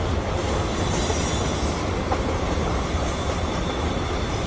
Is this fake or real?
real